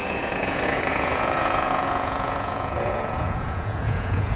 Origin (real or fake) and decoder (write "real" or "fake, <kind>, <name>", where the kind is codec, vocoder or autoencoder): fake, vocoder, Vocos